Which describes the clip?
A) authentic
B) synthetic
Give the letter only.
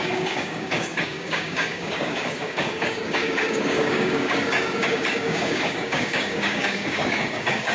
B